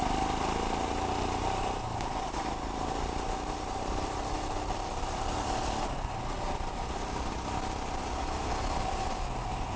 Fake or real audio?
real